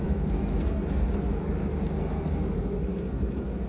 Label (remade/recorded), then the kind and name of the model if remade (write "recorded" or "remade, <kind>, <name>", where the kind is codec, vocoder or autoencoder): remade, codec, SNAC